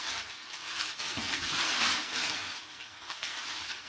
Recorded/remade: remade